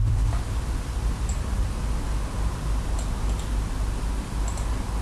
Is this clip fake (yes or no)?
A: yes